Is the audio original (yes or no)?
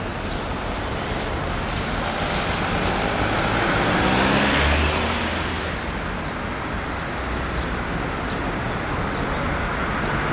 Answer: yes